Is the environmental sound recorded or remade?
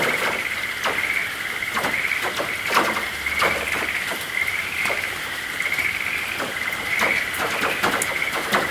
recorded